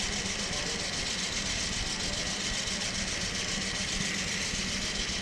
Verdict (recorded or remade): recorded